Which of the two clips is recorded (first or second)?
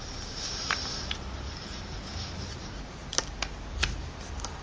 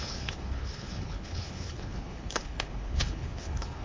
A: first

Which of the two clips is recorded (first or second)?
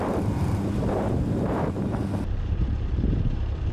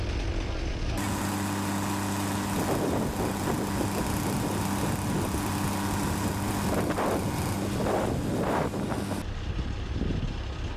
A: second